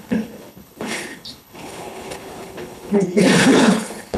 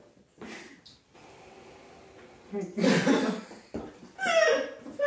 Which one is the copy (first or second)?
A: first